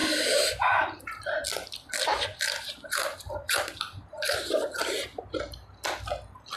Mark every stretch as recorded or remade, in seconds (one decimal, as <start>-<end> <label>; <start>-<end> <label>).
0.0-1.1 remade; 1.1-2.1 recorded; 2.1-5.4 remade; 5.4-6.6 recorded